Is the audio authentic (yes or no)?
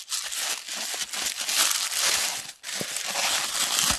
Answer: yes